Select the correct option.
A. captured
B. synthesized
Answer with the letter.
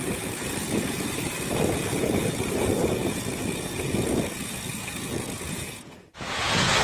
B